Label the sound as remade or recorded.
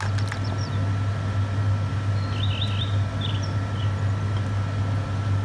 recorded